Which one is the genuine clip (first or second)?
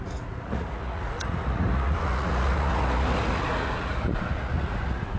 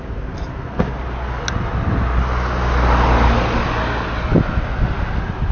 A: second